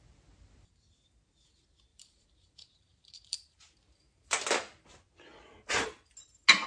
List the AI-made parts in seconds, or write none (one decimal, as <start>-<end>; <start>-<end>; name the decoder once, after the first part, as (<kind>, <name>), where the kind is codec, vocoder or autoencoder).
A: 1.9-4.4 (vocoder, BigVGAN v2)